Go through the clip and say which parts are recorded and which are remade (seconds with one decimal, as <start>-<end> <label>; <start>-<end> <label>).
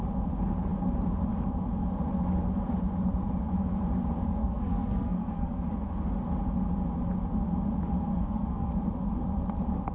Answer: 0.0-4.4 recorded; 4.4-5.6 remade; 5.6-8.1 recorded; 8.1-8.7 remade; 8.7-9.9 recorded